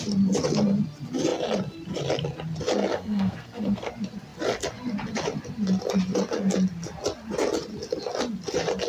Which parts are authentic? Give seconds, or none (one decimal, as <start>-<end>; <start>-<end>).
0.0-2.9; 3.9-8.9